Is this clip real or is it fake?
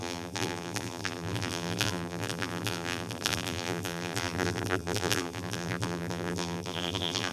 fake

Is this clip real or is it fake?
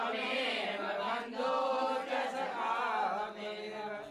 real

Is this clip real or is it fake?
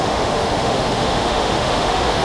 fake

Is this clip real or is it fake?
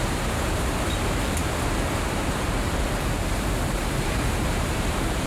fake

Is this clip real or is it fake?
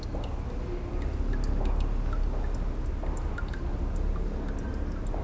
real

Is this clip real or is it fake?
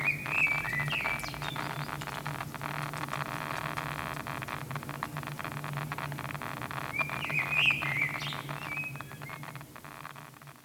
real